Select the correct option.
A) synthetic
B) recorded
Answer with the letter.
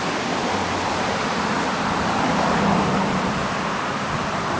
A